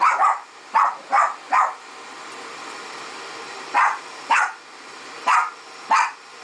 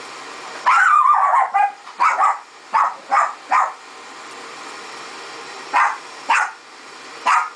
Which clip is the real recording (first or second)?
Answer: second